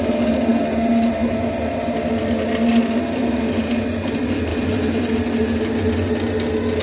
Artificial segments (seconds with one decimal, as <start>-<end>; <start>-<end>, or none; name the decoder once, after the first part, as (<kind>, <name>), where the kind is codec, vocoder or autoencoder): 4.5-5.1 (vocoder, BigVGAN v2)